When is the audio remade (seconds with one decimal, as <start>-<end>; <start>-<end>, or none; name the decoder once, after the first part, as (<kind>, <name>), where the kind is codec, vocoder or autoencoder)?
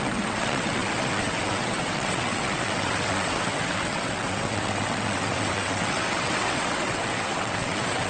0.0-8.1 (vocoder, WaveNeXt)